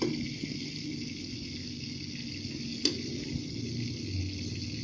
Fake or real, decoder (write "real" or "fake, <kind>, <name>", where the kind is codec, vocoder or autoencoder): real